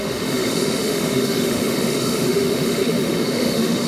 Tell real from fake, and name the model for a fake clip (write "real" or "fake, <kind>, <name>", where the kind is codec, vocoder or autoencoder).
fake, autoencoder, DAC-VAE